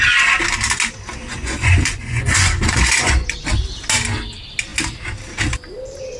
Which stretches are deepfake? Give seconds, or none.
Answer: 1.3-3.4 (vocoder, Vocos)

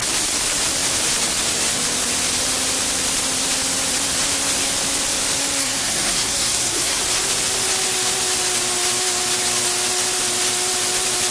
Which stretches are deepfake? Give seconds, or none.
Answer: 5.6-7.0 (codec, SNAC)

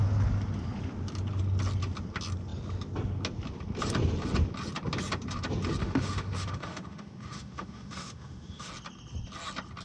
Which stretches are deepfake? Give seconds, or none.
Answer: 5.8-8.7 (autoencoder, DAC-VAE)

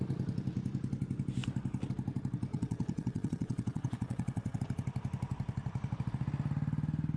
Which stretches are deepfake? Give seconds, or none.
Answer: 2.5-4.6 (vocoder, WaveNeXt)

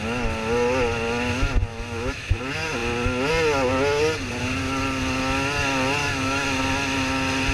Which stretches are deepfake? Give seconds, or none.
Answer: 1.7-2.4 (autoencoder, DAC-VAE); 6.0-6.6

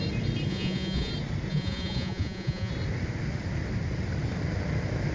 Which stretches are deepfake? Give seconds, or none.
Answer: 0.5-1.1 (vocoder, Vocos); 1.5-2.7